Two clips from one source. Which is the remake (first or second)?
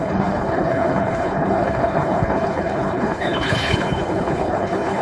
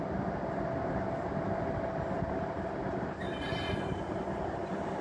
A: first